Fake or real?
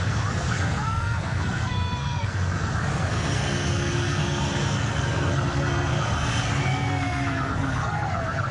fake